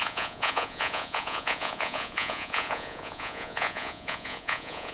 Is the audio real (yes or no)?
no